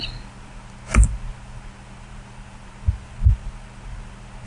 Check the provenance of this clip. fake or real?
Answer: real